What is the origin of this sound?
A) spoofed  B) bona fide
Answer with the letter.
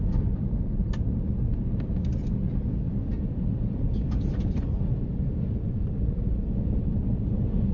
B